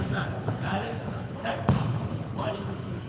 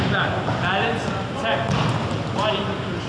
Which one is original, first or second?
second